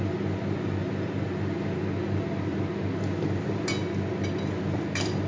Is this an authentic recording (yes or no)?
yes